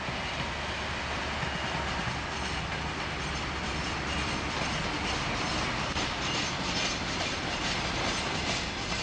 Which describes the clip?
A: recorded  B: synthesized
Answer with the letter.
A